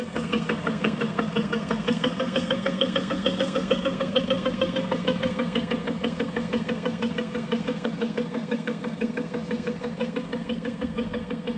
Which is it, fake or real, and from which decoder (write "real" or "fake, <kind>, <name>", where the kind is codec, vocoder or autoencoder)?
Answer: fake, codec, SNAC